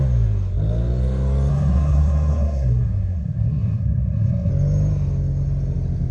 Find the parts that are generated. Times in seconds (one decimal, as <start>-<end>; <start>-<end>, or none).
1.5-4.5